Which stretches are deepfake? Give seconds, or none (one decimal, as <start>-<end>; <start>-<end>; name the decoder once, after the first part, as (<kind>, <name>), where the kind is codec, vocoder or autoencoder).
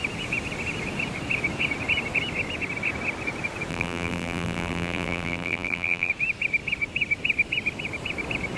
3.7-6.1 (vocoder, BigVGAN v2)